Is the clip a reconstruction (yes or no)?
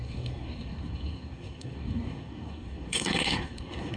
yes